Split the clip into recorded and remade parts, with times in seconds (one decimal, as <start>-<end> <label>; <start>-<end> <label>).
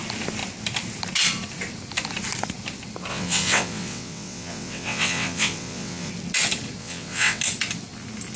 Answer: 0.0-3.1 recorded; 3.1-6.1 remade; 6.1-6.8 recorded; 6.8-7.4 remade; 7.4-8.4 recorded